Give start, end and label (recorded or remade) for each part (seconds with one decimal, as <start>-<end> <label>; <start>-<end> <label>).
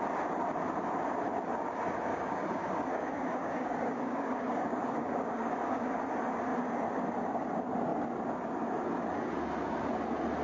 0.0-2.1 recorded; 2.1-6.1 remade; 6.1-10.4 recorded